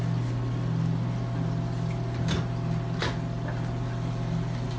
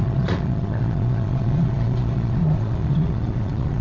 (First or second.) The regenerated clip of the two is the second